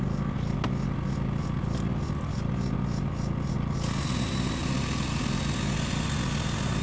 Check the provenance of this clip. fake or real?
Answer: real